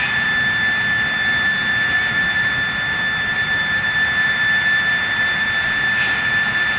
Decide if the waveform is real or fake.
real